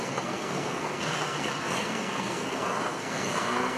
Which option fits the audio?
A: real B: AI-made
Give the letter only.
B